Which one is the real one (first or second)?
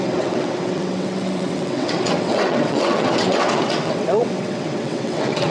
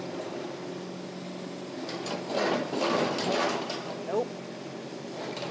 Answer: second